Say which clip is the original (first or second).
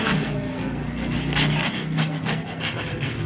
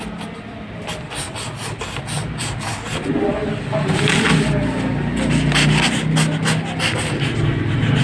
second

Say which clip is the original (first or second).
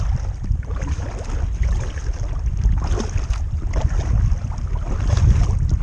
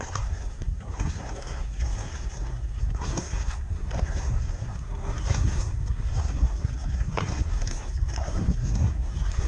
first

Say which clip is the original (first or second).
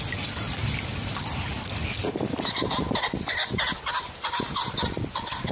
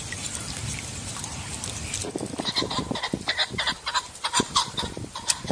first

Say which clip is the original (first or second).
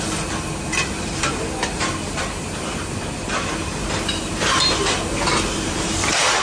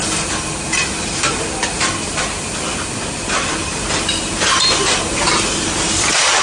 first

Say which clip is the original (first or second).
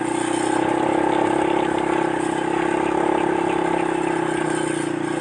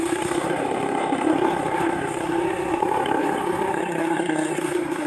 first